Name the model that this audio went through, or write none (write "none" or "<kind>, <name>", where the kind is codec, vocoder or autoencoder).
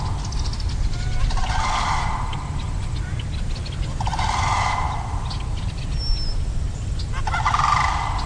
none